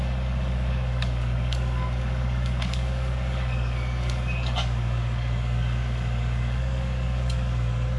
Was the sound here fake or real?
fake